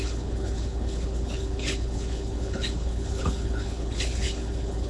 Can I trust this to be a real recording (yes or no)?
no